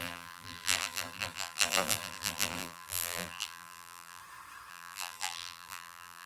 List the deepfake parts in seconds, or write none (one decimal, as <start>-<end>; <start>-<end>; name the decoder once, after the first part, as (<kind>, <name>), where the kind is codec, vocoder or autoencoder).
0.0-4.2 (vocoder, BigVGAN v2); 4.7-6.3